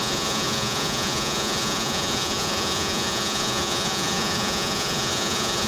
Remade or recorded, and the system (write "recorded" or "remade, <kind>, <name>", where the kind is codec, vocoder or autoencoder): remade, vocoder, Vocos